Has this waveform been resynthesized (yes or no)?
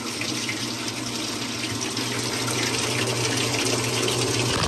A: no